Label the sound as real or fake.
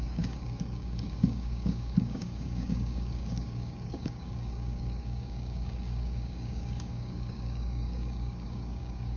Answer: fake